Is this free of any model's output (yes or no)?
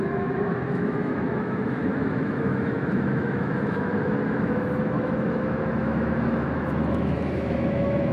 no